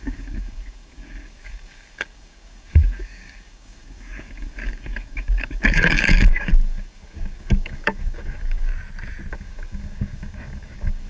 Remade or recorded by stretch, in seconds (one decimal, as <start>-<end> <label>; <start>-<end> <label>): 0.0-8.7 remade; 8.7-9.3 recorded; 9.3-11.1 remade